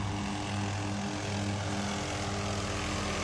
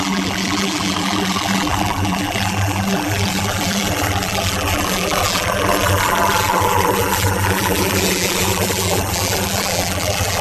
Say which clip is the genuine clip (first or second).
first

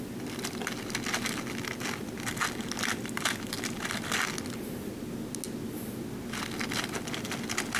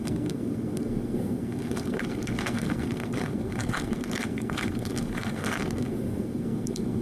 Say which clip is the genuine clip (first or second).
first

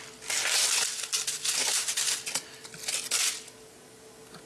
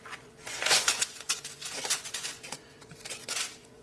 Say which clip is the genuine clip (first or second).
first